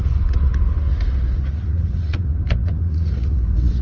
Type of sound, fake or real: fake